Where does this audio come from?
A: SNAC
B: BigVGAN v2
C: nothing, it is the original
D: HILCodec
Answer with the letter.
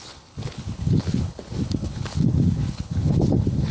D